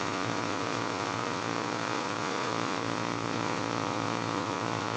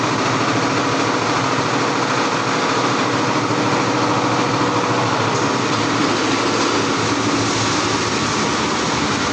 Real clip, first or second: second